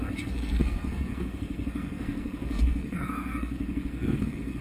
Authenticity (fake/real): fake